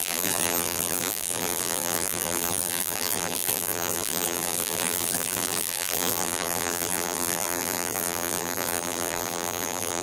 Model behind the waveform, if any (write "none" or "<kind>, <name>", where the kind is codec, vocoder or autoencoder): vocoder, BigVGAN v2